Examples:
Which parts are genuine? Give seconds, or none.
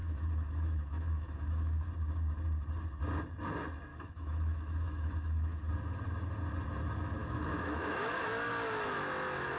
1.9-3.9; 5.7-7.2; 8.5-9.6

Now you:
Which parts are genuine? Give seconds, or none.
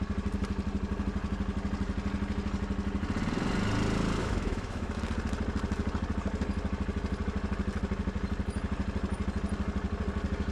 0.0-4.2; 5.0-10.5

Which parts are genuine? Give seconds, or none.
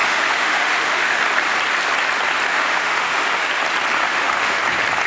1.2-2.5; 3.4-4.0; 4.6-5.1